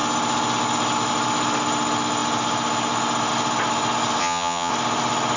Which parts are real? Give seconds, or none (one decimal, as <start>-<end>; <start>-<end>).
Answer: 0.0-4.2; 4.7-5.4